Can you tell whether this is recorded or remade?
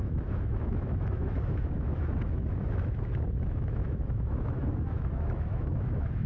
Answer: remade